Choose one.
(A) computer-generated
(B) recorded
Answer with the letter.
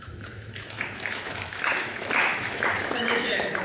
A